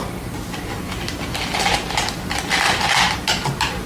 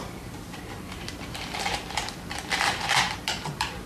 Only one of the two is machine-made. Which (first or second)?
second